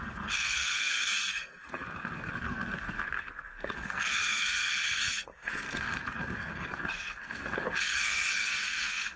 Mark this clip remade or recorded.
remade